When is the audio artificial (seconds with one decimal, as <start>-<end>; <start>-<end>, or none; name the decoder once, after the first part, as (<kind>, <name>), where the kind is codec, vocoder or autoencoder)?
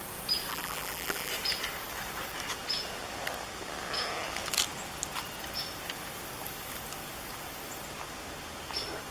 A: 0.5-1.3 (vocoder, BigVGAN v2)